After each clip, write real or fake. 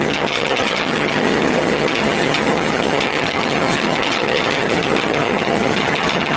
fake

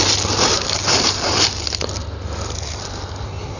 real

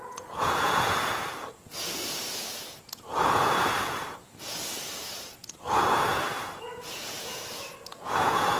fake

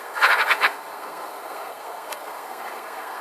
fake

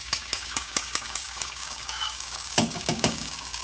fake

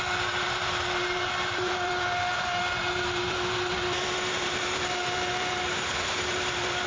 fake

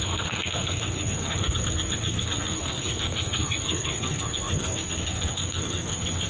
fake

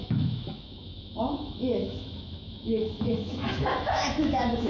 fake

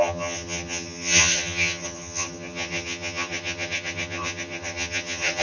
fake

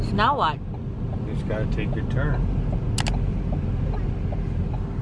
real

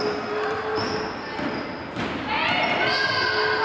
real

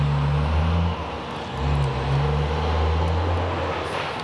real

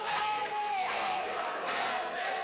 fake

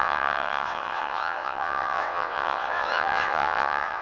fake